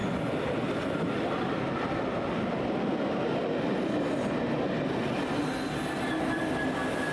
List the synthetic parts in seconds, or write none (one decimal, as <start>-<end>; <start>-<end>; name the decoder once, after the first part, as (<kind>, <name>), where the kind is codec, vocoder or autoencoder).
none